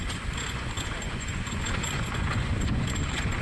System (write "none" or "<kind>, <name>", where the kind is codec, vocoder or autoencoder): vocoder, Vocos